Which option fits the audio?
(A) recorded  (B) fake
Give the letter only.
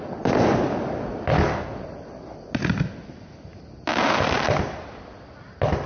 A